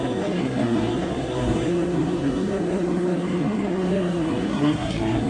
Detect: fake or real fake